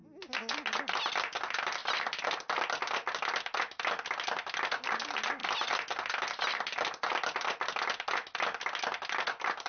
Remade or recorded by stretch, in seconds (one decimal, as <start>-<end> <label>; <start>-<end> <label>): 0.0-9.7 recorded